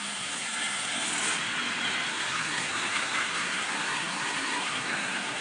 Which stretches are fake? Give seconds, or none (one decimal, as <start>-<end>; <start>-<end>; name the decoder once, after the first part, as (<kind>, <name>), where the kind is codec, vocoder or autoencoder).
0.0-1.1 (codec, SNAC); 2.1-5.4